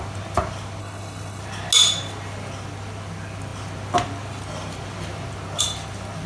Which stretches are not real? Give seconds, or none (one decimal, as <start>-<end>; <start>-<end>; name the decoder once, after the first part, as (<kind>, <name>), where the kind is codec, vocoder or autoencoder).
0.8-1.4 (codec, HILCodec)